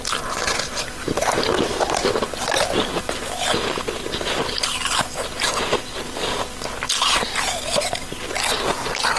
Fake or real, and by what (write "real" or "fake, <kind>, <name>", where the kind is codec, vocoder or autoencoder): real